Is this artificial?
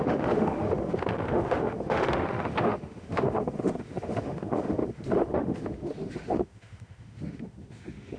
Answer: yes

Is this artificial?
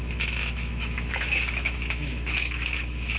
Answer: yes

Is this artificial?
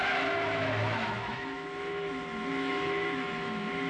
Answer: yes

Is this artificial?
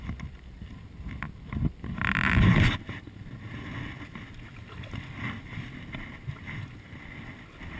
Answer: no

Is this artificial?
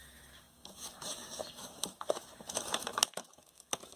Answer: yes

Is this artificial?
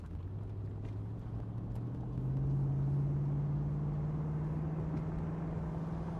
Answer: no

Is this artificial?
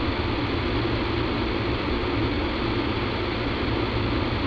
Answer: no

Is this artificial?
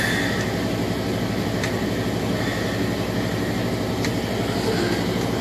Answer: no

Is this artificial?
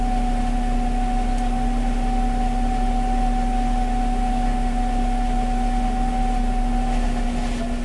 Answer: no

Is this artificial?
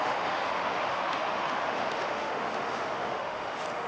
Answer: yes